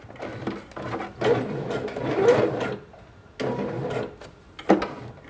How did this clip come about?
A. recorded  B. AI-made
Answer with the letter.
A